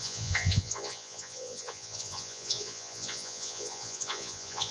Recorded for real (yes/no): no